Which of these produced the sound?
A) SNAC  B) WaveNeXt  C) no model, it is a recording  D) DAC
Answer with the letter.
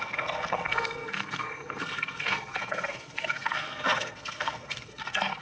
A